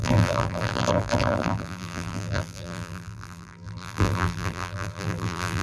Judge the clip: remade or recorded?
remade